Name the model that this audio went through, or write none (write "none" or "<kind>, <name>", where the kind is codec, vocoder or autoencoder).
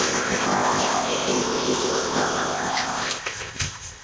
codec, ZipCodec